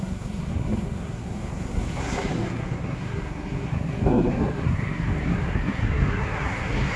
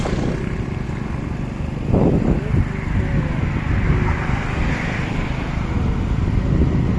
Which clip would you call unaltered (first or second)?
second